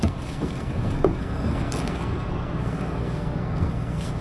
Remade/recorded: remade